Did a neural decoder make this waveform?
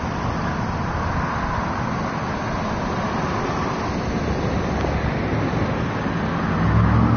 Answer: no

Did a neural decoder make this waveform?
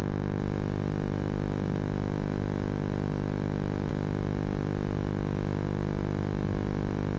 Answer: no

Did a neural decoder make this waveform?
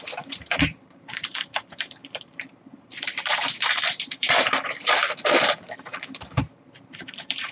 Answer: yes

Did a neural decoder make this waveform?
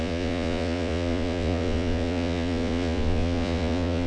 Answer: yes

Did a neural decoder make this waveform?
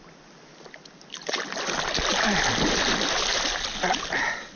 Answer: no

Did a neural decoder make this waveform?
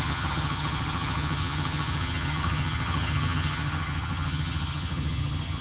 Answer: yes